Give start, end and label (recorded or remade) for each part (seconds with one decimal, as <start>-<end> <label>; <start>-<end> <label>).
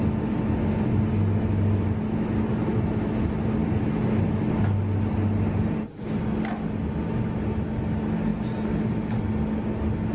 0.0-10.1 recorded